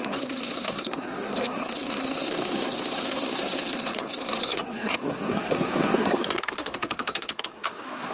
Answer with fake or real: fake